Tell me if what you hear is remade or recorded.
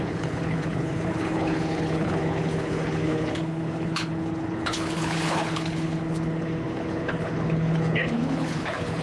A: remade